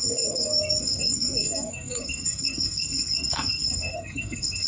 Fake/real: fake